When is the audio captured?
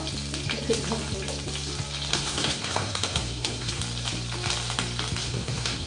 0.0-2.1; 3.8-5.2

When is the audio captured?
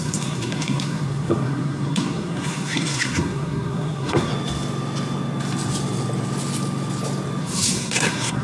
4.3-7.4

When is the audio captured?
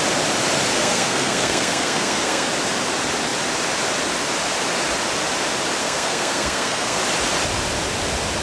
0.0-0.7; 2.5-5.8; 7.0-8.4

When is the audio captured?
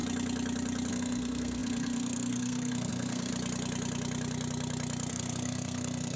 0.0-0.9; 3.3-5.1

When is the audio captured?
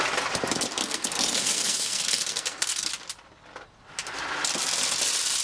0.0-0.8; 2.9-5.4